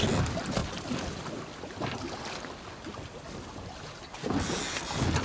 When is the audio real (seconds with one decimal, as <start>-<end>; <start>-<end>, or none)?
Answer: 0.0-5.2